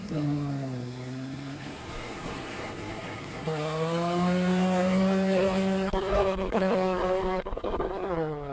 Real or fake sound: fake